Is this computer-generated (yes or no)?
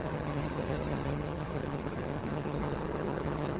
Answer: yes